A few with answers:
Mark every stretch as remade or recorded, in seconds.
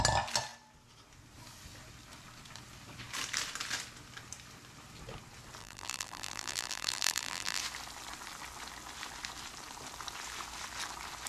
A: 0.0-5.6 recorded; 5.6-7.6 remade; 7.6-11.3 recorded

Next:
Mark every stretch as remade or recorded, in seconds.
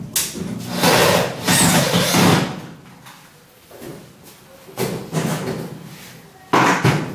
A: 0.0-1.0 recorded; 1.0-1.9 remade; 1.9-7.1 recorded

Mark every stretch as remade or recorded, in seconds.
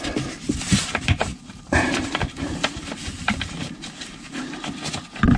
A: 0.0-1.3 recorded; 1.3-4.5 remade; 4.5-5.4 recorded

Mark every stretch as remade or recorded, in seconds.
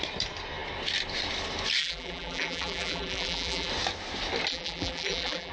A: 0.0-1.8 recorded; 1.8-3.7 remade; 3.7-4.5 recorded; 4.5-5.5 remade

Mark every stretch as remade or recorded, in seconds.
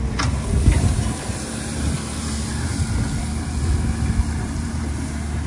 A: 0.0-2.7 remade; 2.7-4.4 recorded; 4.4-5.5 remade